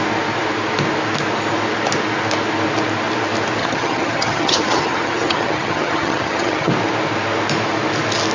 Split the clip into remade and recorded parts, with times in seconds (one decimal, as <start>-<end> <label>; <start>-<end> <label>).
0.0-3.6 recorded; 3.6-6.7 remade; 6.7-8.3 recorded